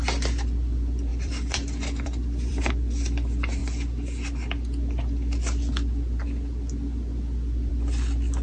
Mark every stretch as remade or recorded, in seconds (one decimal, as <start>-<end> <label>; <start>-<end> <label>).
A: 0.0-1.1 recorded; 1.1-2.7 remade; 2.7-8.4 recorded